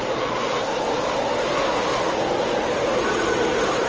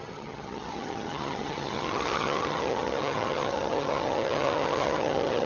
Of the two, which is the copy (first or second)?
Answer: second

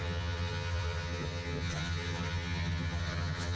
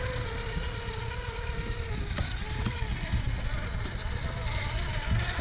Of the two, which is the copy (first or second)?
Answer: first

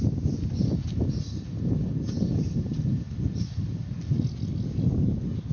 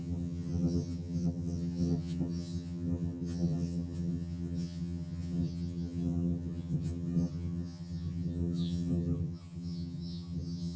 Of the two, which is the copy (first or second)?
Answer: second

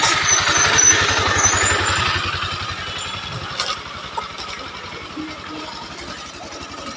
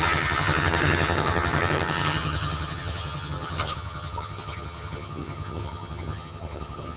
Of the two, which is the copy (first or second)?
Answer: second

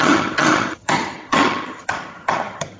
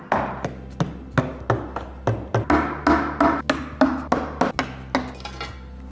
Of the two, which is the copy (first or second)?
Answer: first